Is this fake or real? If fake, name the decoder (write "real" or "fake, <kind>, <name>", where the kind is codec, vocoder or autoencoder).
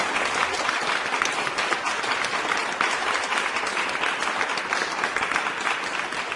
real